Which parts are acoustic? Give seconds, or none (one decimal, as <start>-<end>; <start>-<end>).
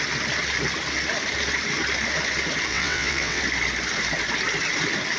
0.0-2.7; 3.4-5.2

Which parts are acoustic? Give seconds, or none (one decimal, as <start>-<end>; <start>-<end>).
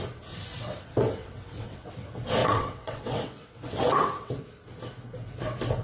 0.0-0.5; 1.9-2.4; 4.3-5.8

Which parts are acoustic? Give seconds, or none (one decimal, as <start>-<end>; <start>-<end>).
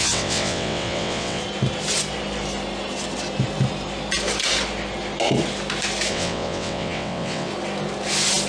1.4-6.1; 7.5-8.5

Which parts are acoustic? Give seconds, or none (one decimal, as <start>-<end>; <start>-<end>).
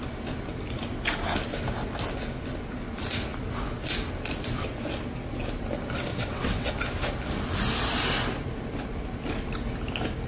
0.0-6.1; 6.7-10.3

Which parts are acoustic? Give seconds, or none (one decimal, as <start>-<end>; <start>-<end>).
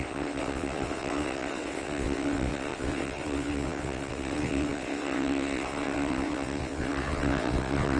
none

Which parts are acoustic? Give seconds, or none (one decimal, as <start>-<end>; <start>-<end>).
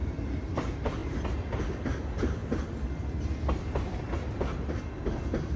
0.0-5.6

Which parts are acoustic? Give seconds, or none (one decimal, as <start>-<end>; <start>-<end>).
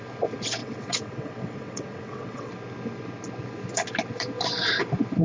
0.0-0.6; 2.5-5.2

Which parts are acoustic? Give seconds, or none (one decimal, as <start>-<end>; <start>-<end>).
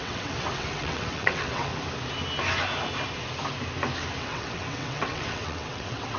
1.7-4.2